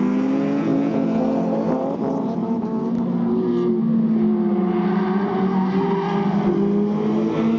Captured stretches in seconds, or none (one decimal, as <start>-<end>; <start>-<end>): 0.0-7.6